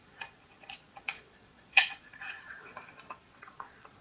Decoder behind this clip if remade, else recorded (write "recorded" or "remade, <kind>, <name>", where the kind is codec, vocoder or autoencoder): remade, vocoder, Vocos